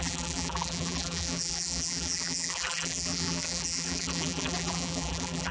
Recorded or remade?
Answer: remade